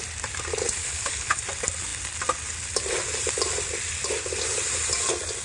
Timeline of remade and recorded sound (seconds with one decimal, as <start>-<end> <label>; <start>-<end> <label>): 0.0-0.8 recorded; 0.8-1.4 remade; 1.4-5.4 recorded